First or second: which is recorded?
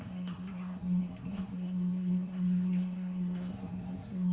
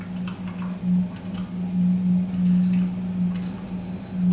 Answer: second